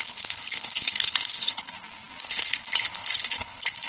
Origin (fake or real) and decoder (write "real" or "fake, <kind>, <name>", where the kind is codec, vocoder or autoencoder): fake, codec, HILCodec